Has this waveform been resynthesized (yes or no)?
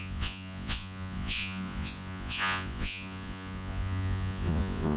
yes